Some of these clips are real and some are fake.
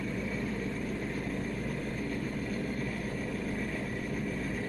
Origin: real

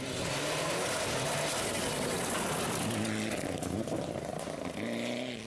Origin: real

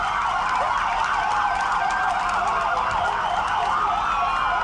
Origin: real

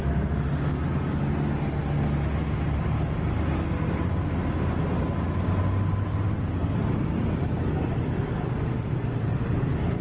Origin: real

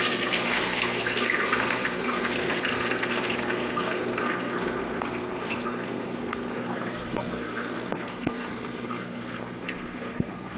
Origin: fake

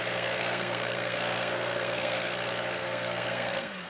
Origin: fake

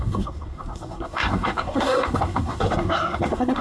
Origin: fake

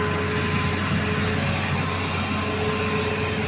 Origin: real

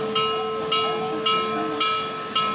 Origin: real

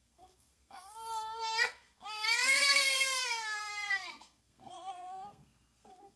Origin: fake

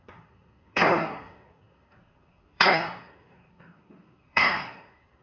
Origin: fake